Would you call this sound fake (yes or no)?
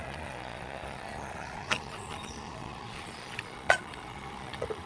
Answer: yes